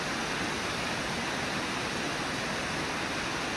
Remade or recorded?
recorded